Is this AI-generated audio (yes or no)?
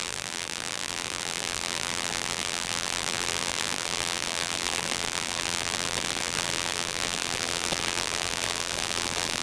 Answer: yes